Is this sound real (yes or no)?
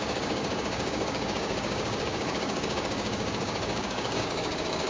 no